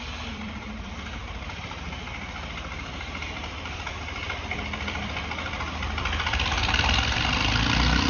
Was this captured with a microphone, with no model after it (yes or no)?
no